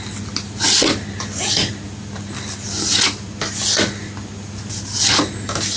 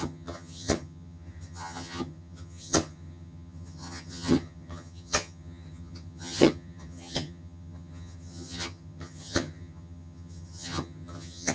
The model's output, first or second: second